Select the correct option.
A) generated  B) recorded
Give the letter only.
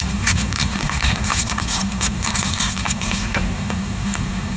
A